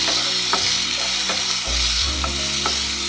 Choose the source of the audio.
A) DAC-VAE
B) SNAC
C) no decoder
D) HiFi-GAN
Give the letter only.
C